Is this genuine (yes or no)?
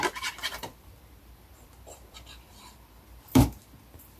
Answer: no